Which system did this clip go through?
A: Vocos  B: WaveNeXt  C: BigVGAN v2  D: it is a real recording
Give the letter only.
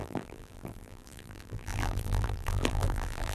C